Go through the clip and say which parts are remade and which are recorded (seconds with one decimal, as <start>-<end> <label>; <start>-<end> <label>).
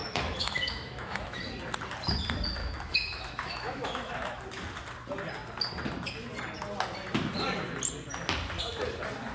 0.0-1.4 remade; 1.4-2.6 recorded; 2.6-4.4 remade; 4.4-9.3 recorded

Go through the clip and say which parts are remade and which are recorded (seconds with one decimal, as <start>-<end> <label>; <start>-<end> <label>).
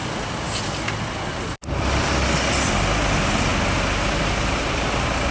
0.0-5.3 recorded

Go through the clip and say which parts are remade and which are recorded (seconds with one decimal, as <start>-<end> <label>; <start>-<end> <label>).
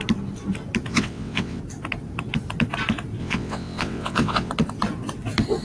0.0-0.9 recorded; 0.9-1.6 remade; 1.6-3.2 recorded; 3.2-4.5 remade; 4.5-5.6 recorded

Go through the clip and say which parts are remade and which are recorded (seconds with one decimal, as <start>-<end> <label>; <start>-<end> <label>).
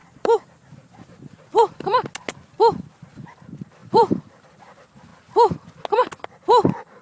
0.0-1.8 remade; 1.8-3.8 recorded; 3.8-4.6 remade; 4.6-7.0 recorded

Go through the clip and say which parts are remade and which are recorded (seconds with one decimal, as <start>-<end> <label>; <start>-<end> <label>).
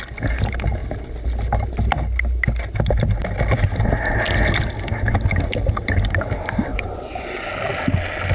0.0-6.7 recorded; 6.7-7.5 remade; 7.5-8.3 recorded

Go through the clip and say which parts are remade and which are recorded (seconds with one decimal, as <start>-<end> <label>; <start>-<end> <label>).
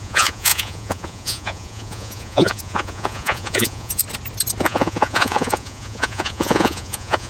0.0-4.0 remade; 4.0-4.6 recorded; 4.6-7.3 remade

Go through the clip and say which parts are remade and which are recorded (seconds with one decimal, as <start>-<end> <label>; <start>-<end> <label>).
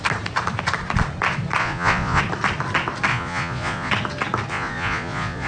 0.0-1.6 recorded; 1.6-2.2 remade; 2.2-3.1 recorded; 3.1-3.9 remade; 3.9-4.5 recorded; 4.5-5.5 remade